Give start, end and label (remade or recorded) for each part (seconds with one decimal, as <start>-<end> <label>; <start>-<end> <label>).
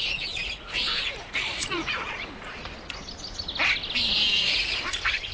0.0-2.6 remade; 2.6-4.4 recorded; 4.4-5.3 remade